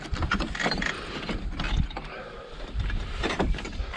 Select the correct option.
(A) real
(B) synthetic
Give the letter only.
A